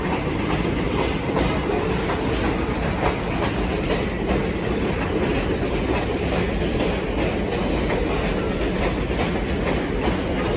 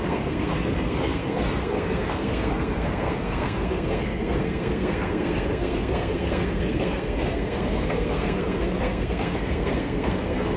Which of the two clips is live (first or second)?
first